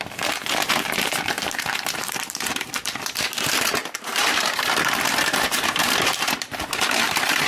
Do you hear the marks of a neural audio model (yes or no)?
yes